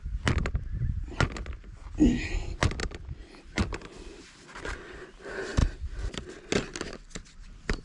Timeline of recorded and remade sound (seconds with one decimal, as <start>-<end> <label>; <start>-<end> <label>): 0.0-2.8 recorded; 2.8-5.0 remade; 5.0-7.8 recorded